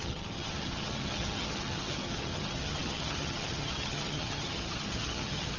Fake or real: fake